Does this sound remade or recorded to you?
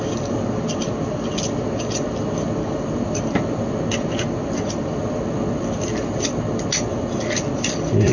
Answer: recorded